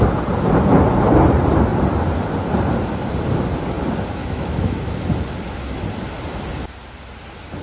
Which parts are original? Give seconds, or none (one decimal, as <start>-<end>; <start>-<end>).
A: 0.0-4.2; 4.9-7.6